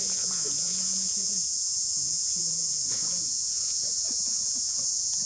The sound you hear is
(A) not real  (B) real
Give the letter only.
A